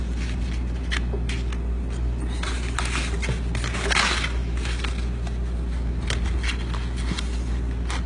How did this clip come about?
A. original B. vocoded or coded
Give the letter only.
A